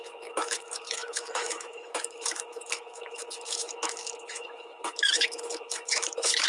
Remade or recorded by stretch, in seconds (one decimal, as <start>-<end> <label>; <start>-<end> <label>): 0.0-6.5 remade